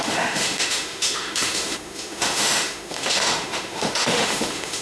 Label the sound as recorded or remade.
remade